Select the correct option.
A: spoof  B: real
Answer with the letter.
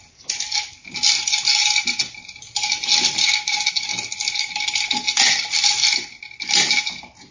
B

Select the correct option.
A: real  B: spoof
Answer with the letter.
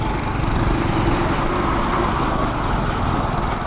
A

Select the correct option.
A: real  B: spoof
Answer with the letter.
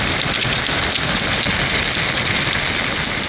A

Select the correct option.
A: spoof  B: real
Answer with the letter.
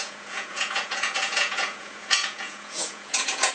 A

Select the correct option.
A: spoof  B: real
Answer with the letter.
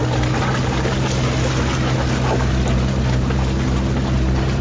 B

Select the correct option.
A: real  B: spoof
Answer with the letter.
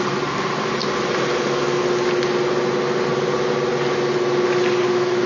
A